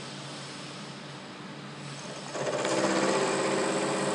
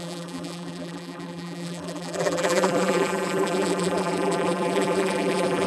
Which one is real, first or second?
first